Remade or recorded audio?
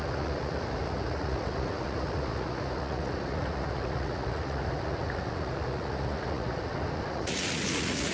remade